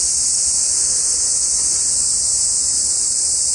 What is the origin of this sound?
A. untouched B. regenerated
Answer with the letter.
A